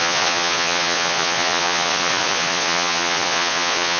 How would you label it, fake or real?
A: fake